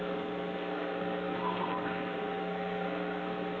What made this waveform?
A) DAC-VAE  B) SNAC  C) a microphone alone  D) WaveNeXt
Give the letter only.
B